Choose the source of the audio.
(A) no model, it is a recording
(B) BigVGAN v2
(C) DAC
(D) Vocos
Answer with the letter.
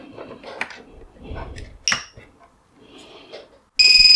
A